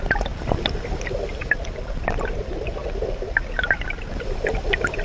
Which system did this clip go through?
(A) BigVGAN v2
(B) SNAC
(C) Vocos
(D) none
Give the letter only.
D